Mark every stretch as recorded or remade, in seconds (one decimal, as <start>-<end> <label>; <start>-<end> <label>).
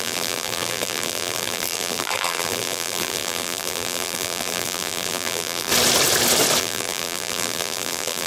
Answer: 0.0-5.7 remade; 5.7-6.6 recorded; 6.6-8.3 remade